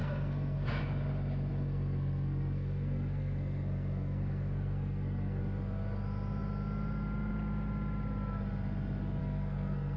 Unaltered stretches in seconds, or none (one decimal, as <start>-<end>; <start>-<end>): 0.8-1.5; 5.4-9.2